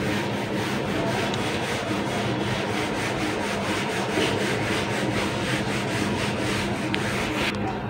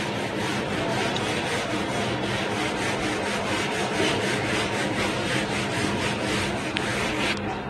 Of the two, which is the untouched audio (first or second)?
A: first